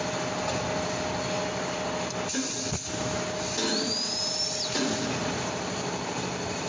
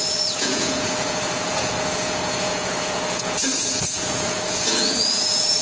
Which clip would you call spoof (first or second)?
second